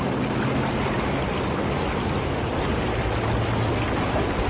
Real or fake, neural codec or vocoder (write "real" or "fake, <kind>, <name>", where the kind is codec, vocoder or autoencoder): real